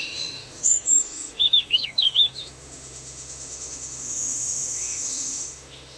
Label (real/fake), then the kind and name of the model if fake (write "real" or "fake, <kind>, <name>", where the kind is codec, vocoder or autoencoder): fake, autoencoder, DAC-VAE